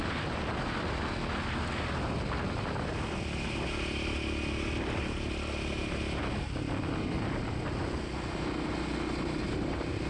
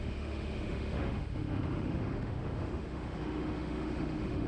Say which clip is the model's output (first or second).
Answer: second